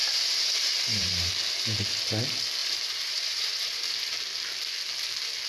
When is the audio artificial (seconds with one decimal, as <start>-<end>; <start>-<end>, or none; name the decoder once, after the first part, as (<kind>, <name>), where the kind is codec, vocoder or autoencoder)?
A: 0.0-1.3 (vocoder, BigVGAN v2); 2.6-4.2